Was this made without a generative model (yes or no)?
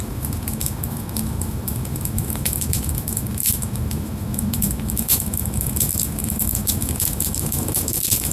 no